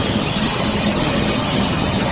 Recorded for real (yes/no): no